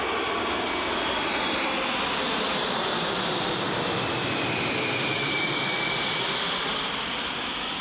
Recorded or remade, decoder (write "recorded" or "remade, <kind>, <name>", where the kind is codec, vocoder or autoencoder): recorded